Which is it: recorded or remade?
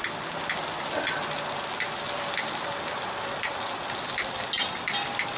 recorded